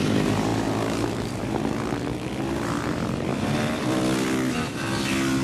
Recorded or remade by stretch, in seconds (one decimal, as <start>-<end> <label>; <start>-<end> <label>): 0.0-5.4 recorded